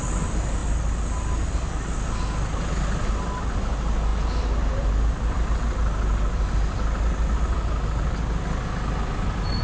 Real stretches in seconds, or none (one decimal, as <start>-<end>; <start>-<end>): 0.0-9.6